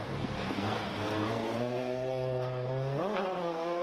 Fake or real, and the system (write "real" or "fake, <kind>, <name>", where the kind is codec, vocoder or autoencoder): fake, codec, SNAC